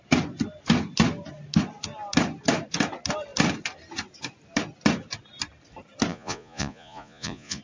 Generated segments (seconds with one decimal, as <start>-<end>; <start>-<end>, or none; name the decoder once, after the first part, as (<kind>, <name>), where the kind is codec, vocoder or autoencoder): 6.1-7.6 (vocoder, Vocos)